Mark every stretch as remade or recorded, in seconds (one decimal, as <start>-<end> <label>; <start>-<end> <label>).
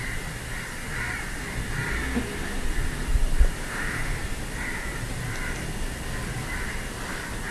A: 0.0-3.6 recorded; 3.6-4.1 remade; 4.1-7.5 recorded